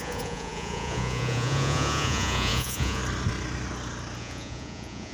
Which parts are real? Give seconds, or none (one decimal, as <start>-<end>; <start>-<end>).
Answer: 3.0-4.2